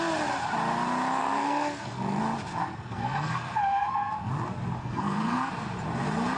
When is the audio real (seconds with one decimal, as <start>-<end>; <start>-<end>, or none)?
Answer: 0.0-1.2; 2.2-2.6; 4.3-4.8; 5.5-6.4